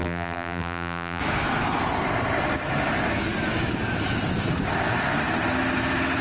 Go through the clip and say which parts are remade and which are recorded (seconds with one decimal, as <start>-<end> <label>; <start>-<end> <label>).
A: 0.0-1.2 remade; 1.2-6.2 recorded